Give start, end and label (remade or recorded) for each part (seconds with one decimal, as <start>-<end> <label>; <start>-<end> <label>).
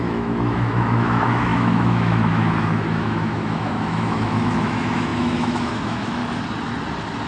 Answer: 0.0-6.2 remade; 6.2-7.3 recorded